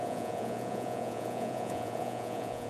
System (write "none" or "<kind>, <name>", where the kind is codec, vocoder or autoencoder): vocoder, Vocos